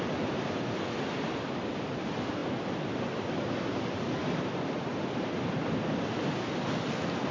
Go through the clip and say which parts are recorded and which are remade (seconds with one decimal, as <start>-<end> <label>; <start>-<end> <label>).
0.0-7.3 recorded